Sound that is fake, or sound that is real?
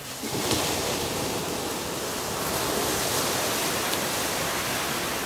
real